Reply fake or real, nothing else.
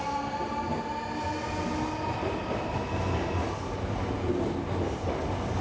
real